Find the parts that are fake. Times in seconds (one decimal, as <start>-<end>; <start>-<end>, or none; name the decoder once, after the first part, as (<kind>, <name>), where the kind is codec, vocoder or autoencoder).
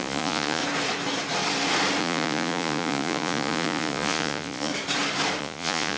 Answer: 0.0-0.6 (vocoder, Vocos); 2.0-4.7; 5.4-6.0